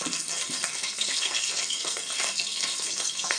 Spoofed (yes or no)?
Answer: yes